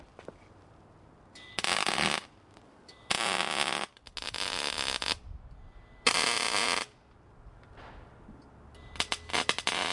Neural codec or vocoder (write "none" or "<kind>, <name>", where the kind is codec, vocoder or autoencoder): none